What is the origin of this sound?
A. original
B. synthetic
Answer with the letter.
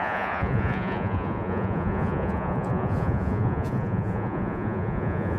B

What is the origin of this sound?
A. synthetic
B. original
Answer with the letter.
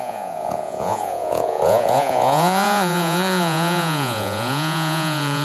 A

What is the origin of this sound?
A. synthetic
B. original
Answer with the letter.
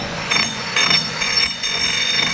A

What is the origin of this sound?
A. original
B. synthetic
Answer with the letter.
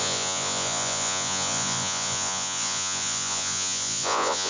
B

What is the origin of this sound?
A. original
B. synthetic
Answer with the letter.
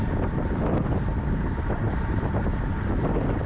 A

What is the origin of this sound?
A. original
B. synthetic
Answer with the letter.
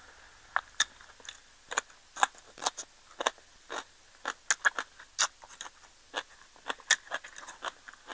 A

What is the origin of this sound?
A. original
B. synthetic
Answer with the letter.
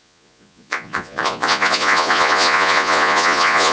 B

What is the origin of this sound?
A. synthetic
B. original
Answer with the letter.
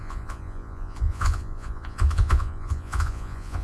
A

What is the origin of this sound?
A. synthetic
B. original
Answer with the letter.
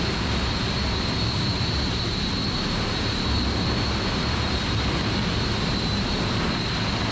B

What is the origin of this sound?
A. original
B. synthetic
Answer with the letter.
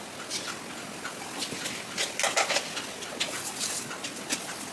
A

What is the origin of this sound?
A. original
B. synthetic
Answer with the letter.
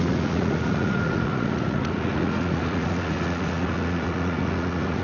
B